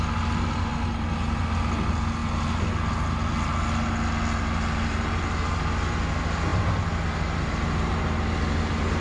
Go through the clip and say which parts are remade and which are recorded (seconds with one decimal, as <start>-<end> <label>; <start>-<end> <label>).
0.0-9.0 recorded

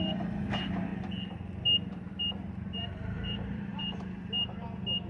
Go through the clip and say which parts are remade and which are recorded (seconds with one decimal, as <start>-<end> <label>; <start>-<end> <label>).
0.0-0.9 remade; 0.9-3.0 recorded; 3.0-3.7 remade; 3.7-5.1 recorded

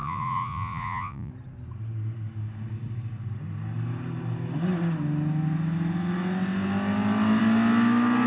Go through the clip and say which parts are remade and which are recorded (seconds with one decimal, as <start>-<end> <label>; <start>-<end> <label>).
0.0-1.3 remade; 1.3-8.3 recorded

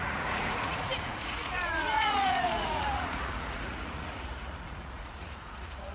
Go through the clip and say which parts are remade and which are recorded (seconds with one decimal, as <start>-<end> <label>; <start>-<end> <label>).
0.0-5.9 remade